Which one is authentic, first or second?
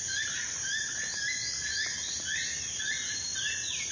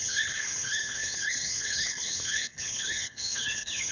first